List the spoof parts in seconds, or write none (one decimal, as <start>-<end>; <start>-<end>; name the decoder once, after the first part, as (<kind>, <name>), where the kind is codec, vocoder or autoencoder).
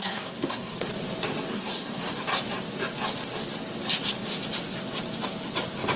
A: 0.0-0.9 (codec, SNAC); 1.5-2.1